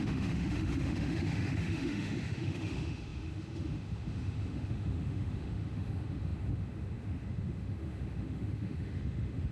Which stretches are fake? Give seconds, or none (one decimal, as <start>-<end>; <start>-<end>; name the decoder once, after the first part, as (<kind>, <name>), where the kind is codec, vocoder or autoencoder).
0.0-9.5 (autoencoder, DAC-VAE)